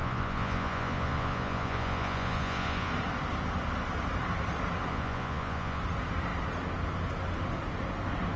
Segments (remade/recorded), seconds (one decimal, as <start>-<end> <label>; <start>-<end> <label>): 0.0-2.9 remade; 2.9-4.9 recorded; 4.9-5.8 remade; 5.8-8.4 recorded